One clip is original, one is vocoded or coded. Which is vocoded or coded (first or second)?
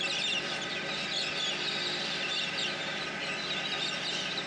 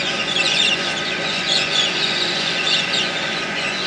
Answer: second